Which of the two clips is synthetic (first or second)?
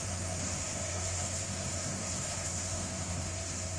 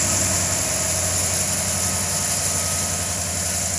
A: first